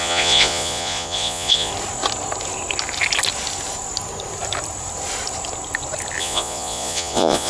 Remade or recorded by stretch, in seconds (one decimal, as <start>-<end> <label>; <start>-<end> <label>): 0.0-1.7 remade; 1.7-6.2 recorded; 6.2-7.5 remade